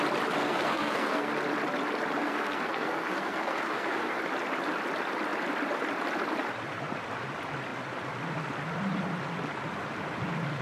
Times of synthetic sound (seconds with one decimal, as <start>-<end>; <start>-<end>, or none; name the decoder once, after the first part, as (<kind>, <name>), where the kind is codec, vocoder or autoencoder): 0.4-1.3 (codec, SNAC); 2.2-4.2